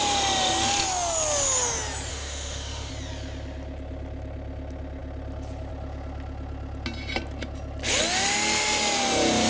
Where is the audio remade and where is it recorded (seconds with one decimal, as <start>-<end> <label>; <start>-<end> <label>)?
0.0-2.1 recorded; 2.1-2.9 remade; 2.9-9.5 recorded